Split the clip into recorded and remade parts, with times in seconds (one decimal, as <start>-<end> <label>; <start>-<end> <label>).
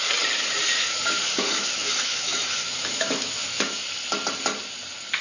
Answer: 0.0-0.7 recorded; 0.7-3.8 remade; 3.8-5.2 recorded